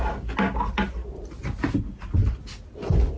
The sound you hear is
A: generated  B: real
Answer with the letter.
B